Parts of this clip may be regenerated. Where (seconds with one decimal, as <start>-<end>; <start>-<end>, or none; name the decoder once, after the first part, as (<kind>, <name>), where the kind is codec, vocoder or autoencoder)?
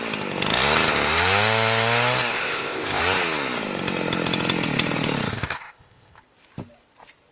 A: 2.3-3.0 (codec, ZipCodec); 5.3-6.2